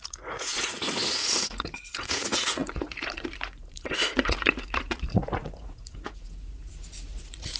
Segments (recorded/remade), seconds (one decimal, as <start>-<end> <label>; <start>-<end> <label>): 0.0-7.6 remade